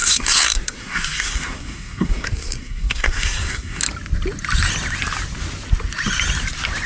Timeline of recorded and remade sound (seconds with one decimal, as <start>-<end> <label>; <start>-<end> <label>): 0.0-3.8 remade; 3.8-6.9 recorded